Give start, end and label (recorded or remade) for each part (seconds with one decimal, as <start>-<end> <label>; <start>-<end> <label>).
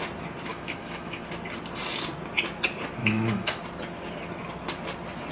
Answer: 0.0-0.5 recorded; 0.5-1.2 remade; 1.2-3.0 recorded; 3.0-3.6 remade; 3.6-5.3 recorded